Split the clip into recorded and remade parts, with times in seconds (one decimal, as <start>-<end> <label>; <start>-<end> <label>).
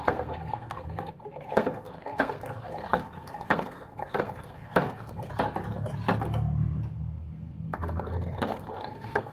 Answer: 0.0-5.3 remade; 5.3-6.9 recorded; 6.9-9.3 remade